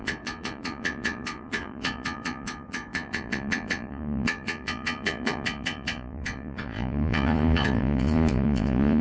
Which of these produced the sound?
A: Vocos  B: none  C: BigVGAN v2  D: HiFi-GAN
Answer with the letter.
A